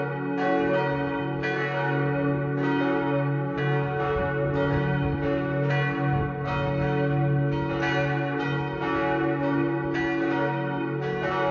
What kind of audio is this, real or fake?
real